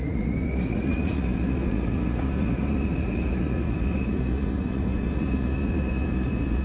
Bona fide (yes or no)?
no